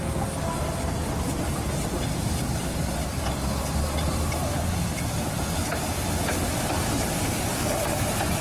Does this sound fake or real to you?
real